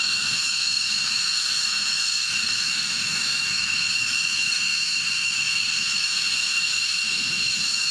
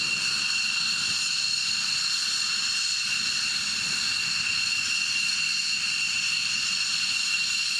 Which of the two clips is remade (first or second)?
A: first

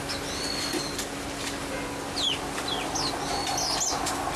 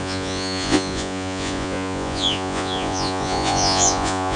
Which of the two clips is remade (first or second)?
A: second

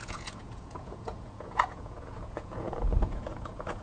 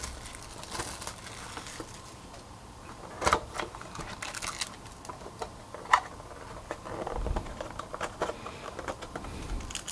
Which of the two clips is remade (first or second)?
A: first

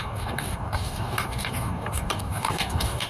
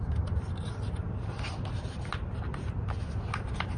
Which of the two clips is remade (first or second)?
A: first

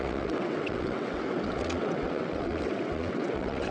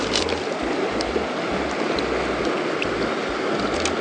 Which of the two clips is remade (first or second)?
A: first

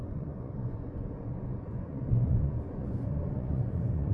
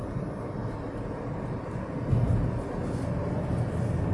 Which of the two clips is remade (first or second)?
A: first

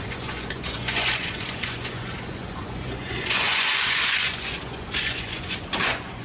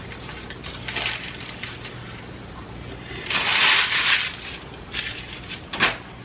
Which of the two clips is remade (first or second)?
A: first